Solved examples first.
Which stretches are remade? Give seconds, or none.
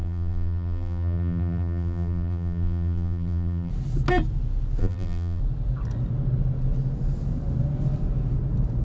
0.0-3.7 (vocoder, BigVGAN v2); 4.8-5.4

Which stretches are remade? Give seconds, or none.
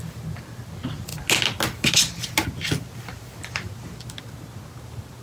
none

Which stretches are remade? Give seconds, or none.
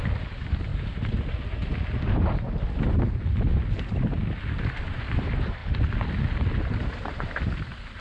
0.0-0.7 (vocoder, BigVGAN v2); 4.8-5.6; 6.6-8.0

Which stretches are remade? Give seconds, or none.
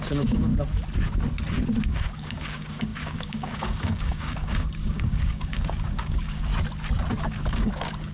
0.0-0.5 (codec, DAC); 1.8-6.5; 7.2-8.1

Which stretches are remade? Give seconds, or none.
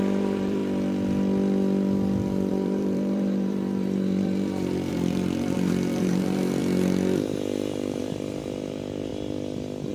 0.0-0.6 (vocoder, BigVGAN v2); 2.5-6.6; 8.0-9.1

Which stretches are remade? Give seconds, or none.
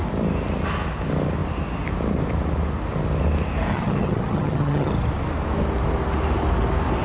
3.7-4.9 (vocoder, HiFi-GAN)